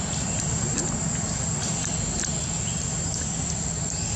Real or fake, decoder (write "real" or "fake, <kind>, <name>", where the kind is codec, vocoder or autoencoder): real